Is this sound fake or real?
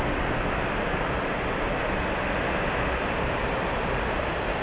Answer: real